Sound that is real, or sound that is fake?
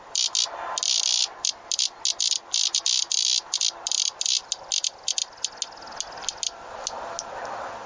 real